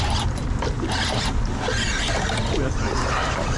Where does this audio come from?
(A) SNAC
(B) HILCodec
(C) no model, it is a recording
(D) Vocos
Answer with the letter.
C